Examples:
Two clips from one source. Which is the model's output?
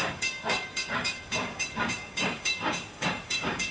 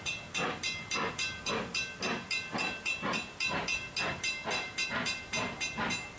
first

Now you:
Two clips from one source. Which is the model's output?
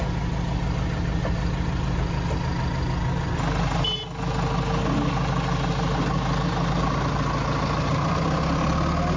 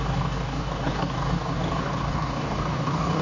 second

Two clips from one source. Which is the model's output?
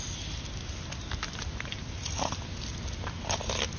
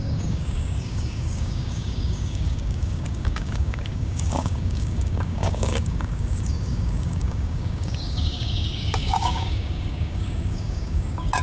second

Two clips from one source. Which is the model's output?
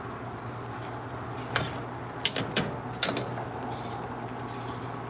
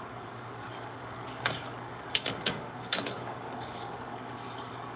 second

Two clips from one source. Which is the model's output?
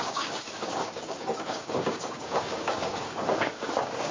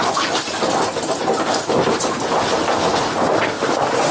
first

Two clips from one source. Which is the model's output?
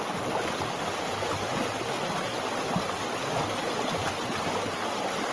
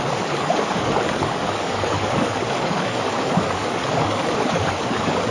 second